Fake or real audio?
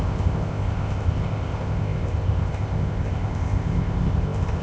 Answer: fake